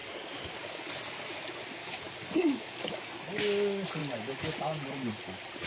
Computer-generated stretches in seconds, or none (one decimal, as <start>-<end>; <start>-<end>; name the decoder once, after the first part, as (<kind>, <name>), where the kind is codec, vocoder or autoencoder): 0.0-0.9 (codec, DAC); 1.8-3.1